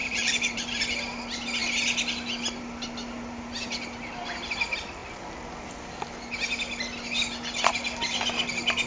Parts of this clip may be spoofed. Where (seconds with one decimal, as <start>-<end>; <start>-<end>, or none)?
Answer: 0.0-0.8